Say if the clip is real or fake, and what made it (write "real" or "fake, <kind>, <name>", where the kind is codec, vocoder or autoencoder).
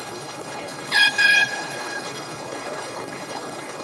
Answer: fake, codec, HILCodec